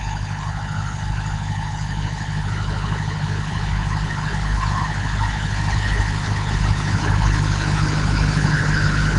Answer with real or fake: fake